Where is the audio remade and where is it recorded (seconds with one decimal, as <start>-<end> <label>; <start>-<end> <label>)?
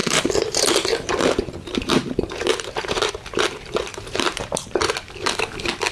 0.0-3.1 remade; 3.1-3.9 recorded; 3.9-4.4 remade; 4.4-5.9 recorded